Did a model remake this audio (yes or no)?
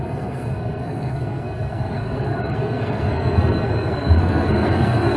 yes